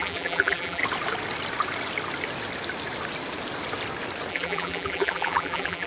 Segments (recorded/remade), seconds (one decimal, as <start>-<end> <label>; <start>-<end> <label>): 0.0-0.8 remade; 0.8-4.3 recorded; 4.3-5.9 remade